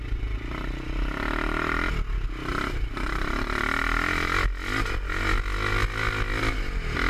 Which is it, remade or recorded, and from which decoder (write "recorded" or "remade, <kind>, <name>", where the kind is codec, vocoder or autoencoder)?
recorded